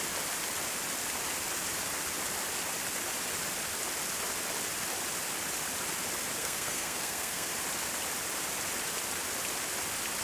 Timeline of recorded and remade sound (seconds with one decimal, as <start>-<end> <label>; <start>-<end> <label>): 0.0-6.4 recorded; 6.4-7.5 remade; 7.5-10.2 recorded